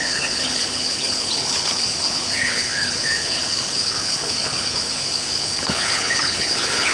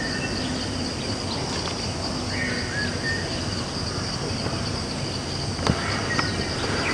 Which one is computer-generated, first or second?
first